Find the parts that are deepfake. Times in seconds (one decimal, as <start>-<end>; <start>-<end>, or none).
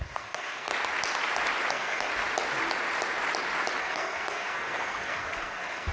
0.0-0.7; 1.7-2.1; 3.8-5.9